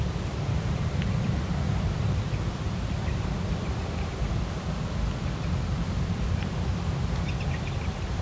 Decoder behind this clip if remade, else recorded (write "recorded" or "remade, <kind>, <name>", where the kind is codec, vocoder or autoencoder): remade, vocoder, BigVGAN v2